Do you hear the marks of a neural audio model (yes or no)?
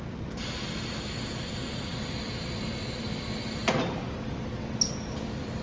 no